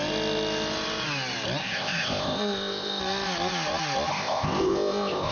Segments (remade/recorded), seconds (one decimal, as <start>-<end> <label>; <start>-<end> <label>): 0.0-1.6 recorded; 1.6-3.0 remade; 3.0-4.1 recorded; 4.1-5.3 remade